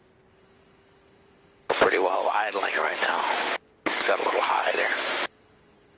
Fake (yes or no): no